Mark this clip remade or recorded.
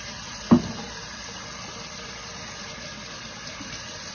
remade